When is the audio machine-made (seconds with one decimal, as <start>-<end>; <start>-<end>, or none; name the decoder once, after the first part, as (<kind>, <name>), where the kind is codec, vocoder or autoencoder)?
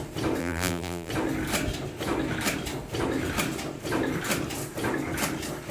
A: 0.4-1.1 (vocoder, BigVGAN v2)